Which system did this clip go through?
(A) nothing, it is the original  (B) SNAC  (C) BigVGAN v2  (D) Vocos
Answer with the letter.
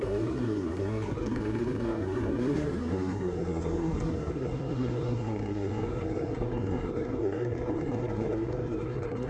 B